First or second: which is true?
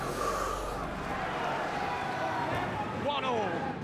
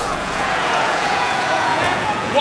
first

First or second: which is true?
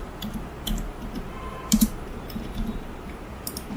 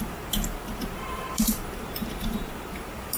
first